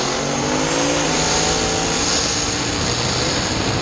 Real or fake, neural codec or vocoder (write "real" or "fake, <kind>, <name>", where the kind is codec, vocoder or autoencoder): real